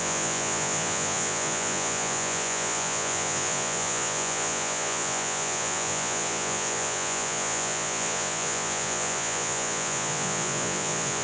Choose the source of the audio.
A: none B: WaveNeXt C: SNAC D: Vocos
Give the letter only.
D